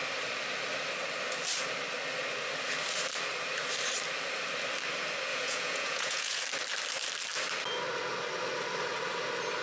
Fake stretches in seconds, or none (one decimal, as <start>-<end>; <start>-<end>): 5.3-6.4

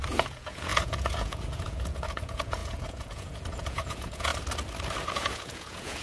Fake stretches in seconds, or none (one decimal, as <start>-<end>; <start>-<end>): 0.0-4.3; 5.1-6.0

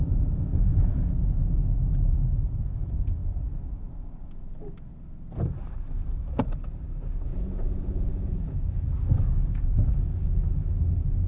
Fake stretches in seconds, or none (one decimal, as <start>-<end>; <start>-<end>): 0.0-3.2; 7.0-11.3

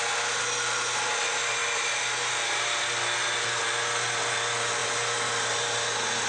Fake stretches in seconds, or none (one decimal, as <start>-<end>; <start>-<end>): none

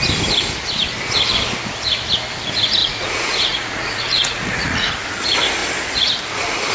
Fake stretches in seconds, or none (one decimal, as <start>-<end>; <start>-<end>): 2.8-4.9

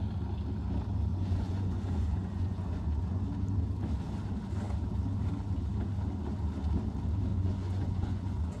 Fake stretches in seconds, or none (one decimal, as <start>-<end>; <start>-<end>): 1.1-3.2; 7.3-8.6